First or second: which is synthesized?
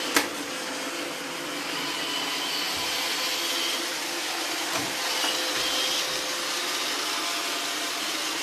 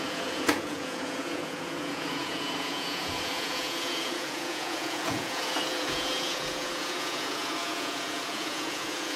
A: second